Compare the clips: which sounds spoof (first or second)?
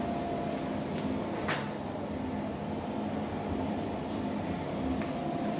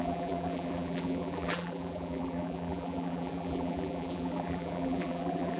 second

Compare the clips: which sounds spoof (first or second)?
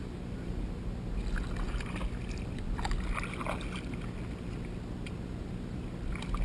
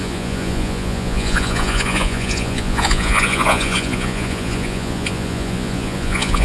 second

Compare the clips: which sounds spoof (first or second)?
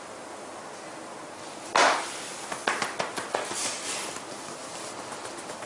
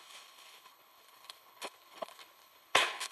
second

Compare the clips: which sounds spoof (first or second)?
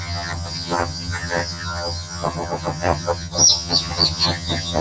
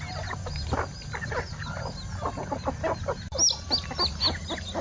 first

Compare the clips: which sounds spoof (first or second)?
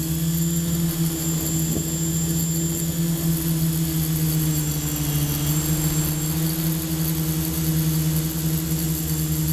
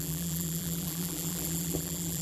second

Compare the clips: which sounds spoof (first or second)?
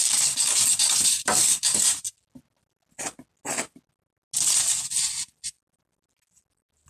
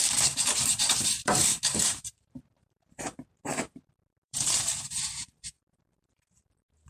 second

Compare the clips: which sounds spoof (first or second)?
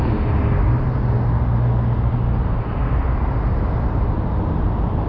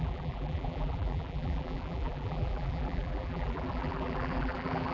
second